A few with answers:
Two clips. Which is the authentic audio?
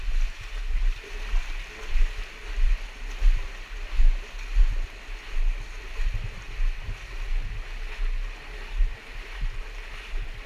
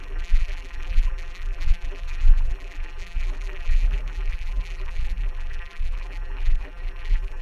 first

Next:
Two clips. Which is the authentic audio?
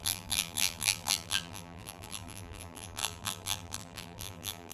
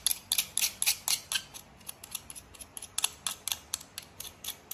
second